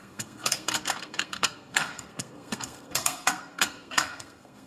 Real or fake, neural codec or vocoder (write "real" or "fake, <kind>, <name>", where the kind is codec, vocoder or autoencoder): fake, codec, SNAC